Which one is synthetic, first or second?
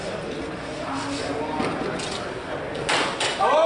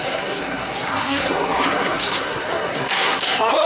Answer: second